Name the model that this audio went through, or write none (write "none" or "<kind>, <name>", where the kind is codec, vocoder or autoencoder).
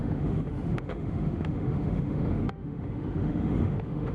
autoencoder, DAC-VAE